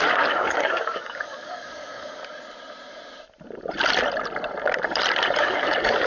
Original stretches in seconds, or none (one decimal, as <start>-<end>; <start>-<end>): 2.2-5.4